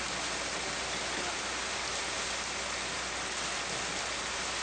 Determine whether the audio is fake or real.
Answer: real